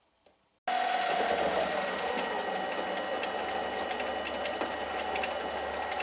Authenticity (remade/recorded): recorded